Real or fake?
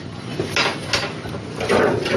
real